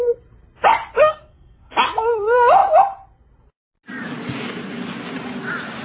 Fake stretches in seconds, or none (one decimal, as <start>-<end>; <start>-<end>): 1.0-1.7